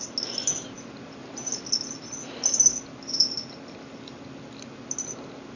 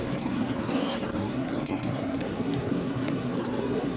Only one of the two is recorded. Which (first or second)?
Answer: first